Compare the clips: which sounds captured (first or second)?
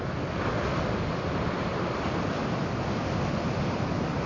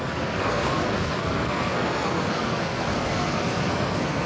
first